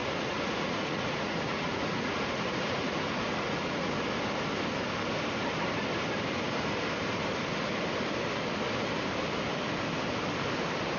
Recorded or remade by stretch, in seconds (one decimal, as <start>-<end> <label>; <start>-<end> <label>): 0.0-3.9 remade; 3.9-11.0 recorded